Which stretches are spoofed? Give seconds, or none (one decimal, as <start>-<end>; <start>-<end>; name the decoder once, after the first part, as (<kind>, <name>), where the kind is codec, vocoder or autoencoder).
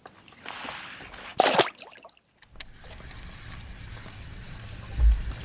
none